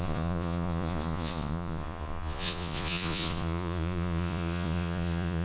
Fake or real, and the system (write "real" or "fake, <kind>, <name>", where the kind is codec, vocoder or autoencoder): fake, vocoder, Vocos